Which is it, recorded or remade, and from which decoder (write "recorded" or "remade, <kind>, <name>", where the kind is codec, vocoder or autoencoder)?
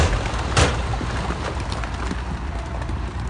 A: remade, vocoder, BigVGAN v2